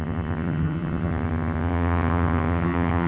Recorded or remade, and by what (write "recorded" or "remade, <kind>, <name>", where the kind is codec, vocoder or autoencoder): remade, vocoder, HiFi-GAN